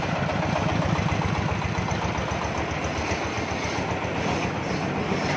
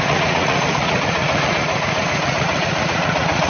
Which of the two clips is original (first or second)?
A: first